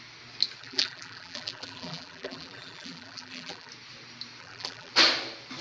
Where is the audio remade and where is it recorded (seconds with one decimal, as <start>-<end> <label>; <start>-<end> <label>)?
0.0-0.6 recorded; 0.6-3.7 remade; 3.7-4.4 recorded; 4.4-4.9 remade; 4.9-5.6 recorded